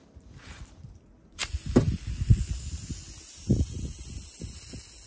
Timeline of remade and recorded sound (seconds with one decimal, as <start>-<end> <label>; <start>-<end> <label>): 0.0-5.1 recorded